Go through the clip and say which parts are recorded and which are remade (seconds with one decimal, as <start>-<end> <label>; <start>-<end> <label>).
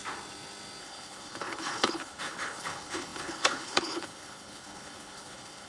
0.0-0.8 recorded; 0.8-5.7 remade